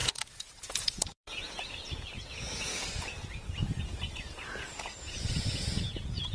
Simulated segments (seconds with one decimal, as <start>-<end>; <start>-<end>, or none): 0.0-6.3